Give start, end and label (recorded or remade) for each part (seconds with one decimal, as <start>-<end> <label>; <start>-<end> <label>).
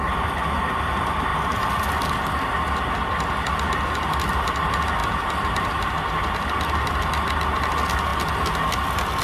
0.0-9.2 recorded